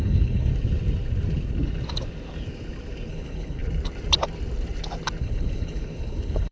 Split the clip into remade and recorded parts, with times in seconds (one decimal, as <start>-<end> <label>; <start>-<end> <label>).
0.0-0.5 remade; 0.5-3.1 recorded; 3.1-3.6 remade; 3.6-5.2 recorded; 5.2-6.5 remade